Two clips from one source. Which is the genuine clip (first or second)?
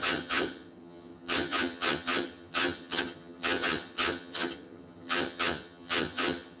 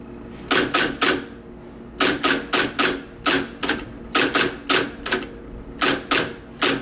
second